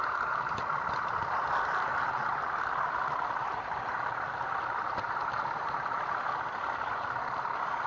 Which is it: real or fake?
fake